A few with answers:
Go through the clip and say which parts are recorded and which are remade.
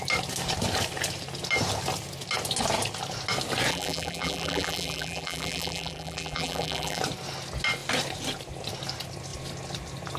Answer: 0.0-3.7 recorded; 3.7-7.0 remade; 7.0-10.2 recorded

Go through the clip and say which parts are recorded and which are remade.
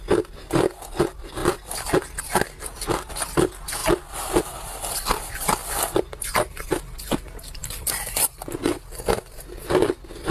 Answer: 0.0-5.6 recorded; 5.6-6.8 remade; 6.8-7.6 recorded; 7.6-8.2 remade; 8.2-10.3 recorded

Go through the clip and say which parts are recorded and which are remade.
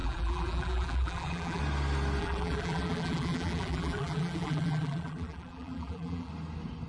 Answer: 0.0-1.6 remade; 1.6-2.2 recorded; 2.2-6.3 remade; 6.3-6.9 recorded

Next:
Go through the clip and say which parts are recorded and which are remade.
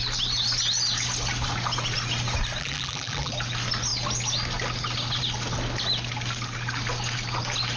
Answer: 0.0-2.6 recorded; 2.6-3.3 remade; 3.3-7.8 recorded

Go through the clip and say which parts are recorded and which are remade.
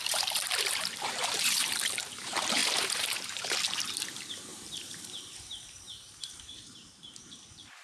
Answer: 0.0-7.8 remade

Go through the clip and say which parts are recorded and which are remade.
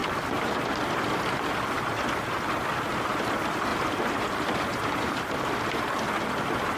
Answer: 0.0-1.0 remade; 1.0-3.7 recorded; 3.7-5.5 remade; 5.5-6.8 recorded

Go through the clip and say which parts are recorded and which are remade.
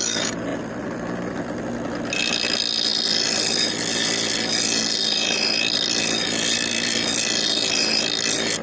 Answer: 0.0-8.6 recorded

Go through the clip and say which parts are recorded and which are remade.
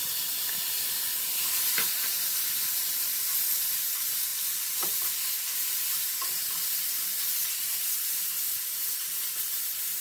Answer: 0.0-3.3 remade; 3.3-3.9 recorded; 3.9-10.0 remade